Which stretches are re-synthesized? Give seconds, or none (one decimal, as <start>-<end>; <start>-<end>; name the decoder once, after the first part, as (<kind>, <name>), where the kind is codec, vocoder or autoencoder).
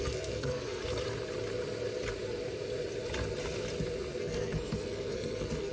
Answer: 0.0-0.8 (codec, SNAC); 4.2-5.7